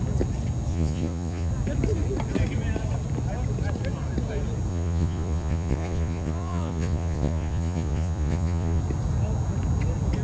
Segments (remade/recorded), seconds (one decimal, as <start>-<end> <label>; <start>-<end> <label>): 0.0-0.7 recorded; 0.7-1.5 remade; 1.5-4.7 recorded; 4.7-8.8 remade; 8.8-10.2 recorded

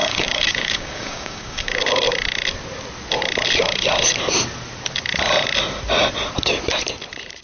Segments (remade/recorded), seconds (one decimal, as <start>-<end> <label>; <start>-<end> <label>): 0.0-1.8 remade; 1.8-7.4 recorded

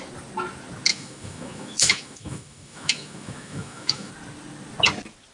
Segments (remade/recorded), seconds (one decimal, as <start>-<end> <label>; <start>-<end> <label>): 0.0-0.9 recorded; 0.9-4.1 remade; 4.1-5.3 recorded

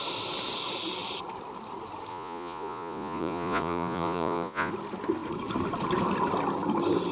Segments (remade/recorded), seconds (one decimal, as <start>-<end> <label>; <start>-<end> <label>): 0.0-2.1 recorded; 2.1-4.7 remade; 4.7-7.1 recorded

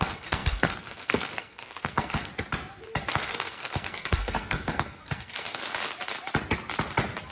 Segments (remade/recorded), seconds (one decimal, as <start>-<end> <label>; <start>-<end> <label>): 0.0-2.3 remade; 2.3-3.1 recorded; 3.1-5.6 remade; 5.6-7.3 recorded

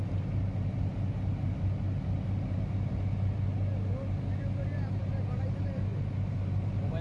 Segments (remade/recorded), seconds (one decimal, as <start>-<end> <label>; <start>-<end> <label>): 0.0-7.0 recorded

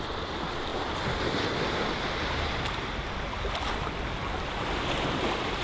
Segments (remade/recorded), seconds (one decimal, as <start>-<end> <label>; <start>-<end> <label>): 0.0-5.6 recorded

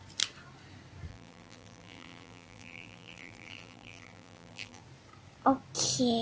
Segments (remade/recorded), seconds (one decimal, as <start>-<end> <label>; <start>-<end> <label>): 0.0-1.1 recorded; 1.1-4.8 remade; 4.8-6.2 recorded